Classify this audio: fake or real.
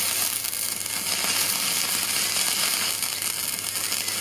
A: real